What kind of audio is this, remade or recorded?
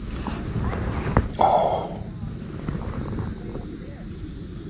remade